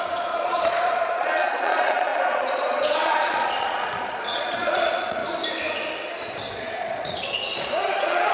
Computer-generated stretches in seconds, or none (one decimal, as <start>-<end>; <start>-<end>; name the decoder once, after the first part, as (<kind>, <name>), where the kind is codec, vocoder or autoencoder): 0.0-5.2 (vocoder, Vocos); 6.5-8.3